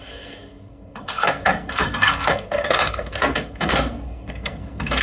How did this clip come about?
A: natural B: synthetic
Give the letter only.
B